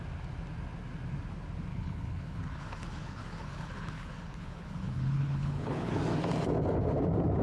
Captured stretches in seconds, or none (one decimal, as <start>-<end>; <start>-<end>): 0.0-1.7; 6.0-7.4